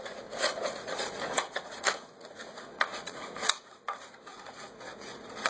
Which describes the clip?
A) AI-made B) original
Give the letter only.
A